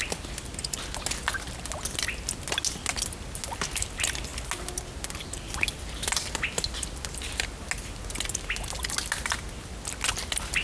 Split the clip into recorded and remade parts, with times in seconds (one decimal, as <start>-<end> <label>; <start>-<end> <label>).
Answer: 0.0-10.6 recorded